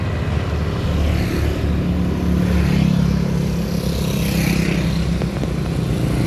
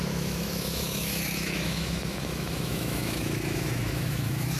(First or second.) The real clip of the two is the first